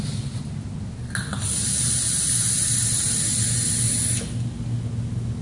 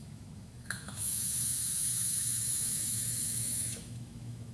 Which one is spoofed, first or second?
second